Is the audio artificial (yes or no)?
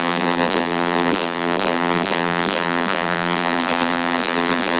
yes